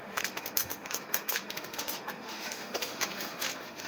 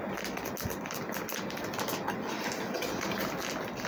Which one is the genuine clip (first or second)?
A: second